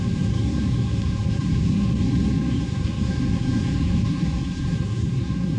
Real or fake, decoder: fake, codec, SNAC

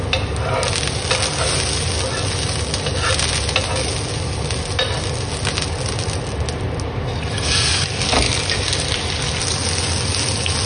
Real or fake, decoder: real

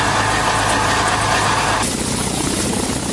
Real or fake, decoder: real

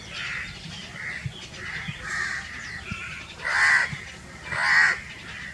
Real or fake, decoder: real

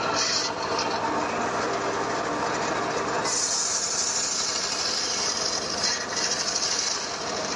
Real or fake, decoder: real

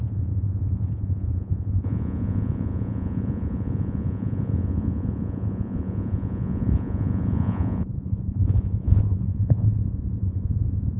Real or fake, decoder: fake, vocoder, Vocos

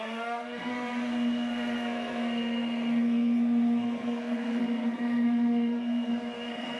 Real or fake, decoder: fake, codec, SNAC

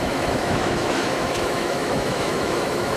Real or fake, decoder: fake, autoencoder, DAC-VAE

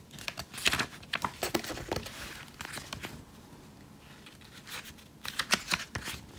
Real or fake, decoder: real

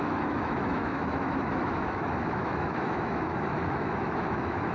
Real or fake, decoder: fake, autoencoder, DAC-VAE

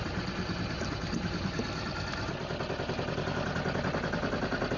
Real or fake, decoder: real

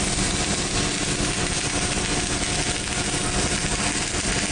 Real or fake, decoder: real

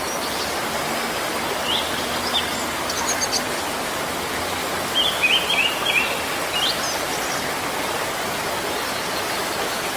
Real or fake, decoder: real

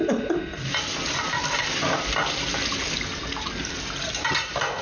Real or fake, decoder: fake, vocoder, BigVGAN v2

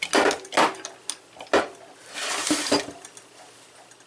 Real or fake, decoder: real